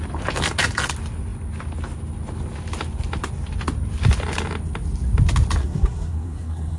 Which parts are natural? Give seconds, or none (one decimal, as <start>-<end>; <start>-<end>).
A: 0.0-5.6